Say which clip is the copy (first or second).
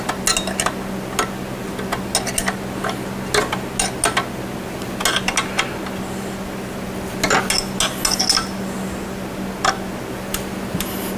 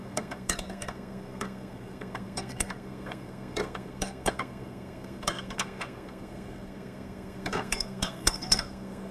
second